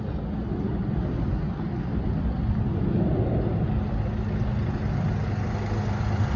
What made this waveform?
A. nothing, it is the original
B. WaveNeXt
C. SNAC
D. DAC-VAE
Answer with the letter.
A